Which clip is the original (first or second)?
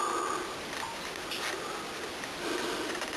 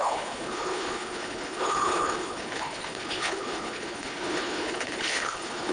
first